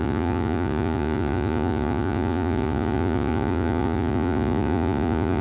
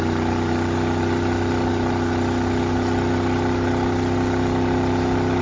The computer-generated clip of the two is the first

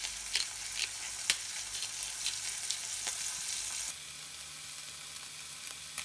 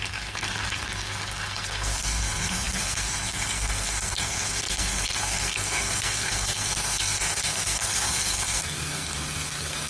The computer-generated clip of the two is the second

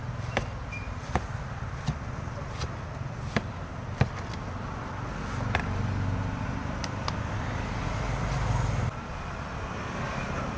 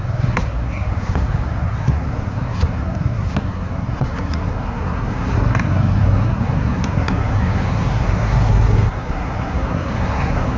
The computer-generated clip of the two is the second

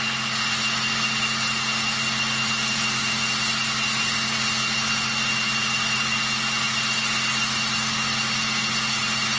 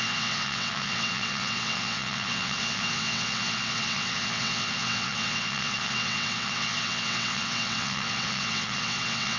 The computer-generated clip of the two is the second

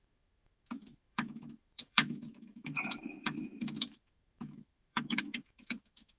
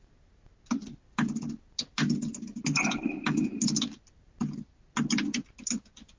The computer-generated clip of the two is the first